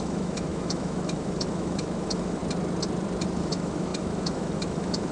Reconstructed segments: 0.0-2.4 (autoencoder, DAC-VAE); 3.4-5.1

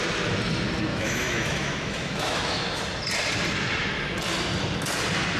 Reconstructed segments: 0.9-2.8 (autoencoder, DAC-VAE)

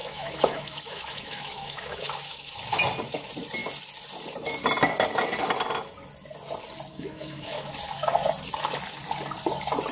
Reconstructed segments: 0.0-2.5 (autoencoder, DAC-VAE); 6.9-7.7

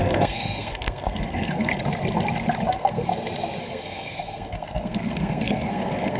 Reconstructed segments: 0.0-1.7 (codec, SNAC); 2.7-3.1; 3.6-6.2

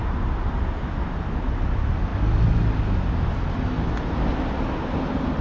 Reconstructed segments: none